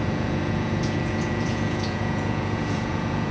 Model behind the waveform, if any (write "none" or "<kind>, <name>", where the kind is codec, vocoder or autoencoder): vocoder, Vocos